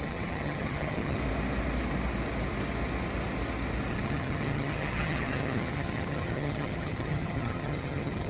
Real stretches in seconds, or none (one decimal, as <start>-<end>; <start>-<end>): 1.2-3.9